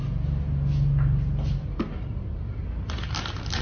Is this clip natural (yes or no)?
yes